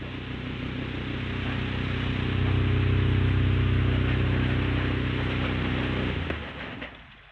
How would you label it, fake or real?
real